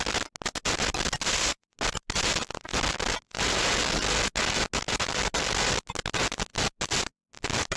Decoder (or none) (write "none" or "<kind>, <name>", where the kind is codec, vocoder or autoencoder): none